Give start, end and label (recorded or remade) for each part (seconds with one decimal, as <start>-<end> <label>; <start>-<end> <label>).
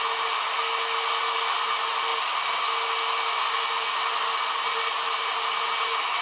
0.0-6.2 recorded